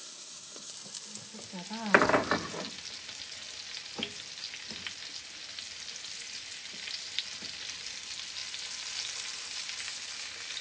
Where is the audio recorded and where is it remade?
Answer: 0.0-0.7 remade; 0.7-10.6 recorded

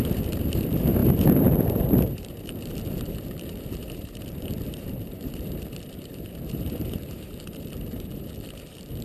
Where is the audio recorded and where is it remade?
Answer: 0.0-9.0 remade

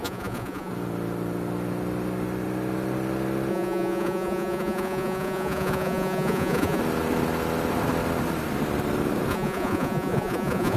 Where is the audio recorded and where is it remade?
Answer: 0.0-0.7 remade; 0.7-3.5 recorded; 3.5-6.8 remade; 6.8-9.3 recorded; 9.3-10.8 remade

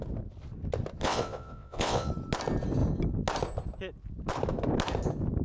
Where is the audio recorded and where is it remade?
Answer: 0.0-1.0 recorded; 1.0-2.1 remade; 2.1-5.4 recorded

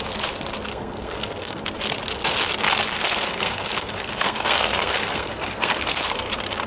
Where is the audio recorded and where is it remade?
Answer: 0.0-0.7 recorded; 0.7-1.6 remade; 1.6-2.9 recorded; 2.9-6.3 remade; 6.3-6.7 recorded

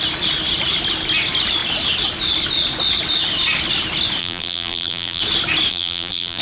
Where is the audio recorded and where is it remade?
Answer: 0.0-4.2 recorded; 4.2-5.2 remade; 5.2-5.7 recorded; 5.7-6.4 remade

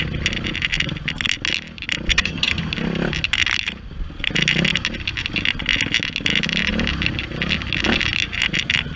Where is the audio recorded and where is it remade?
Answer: 0.0-2.1 recorded; 2.1-2.6 remade; 2.6-9.0 recorded

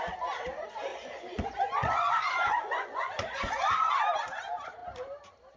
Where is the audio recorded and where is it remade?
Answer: 0.0-0.9 recorded; 0.9-3.9 remade; 3.9-5.6 recorded